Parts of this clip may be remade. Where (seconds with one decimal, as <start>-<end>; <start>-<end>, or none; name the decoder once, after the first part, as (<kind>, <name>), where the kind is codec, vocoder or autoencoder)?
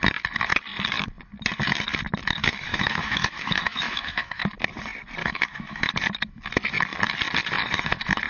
2.4-4.4 (autoencoder, DAC-VAE); 5.2-5.9